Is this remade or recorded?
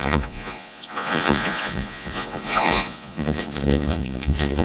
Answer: remade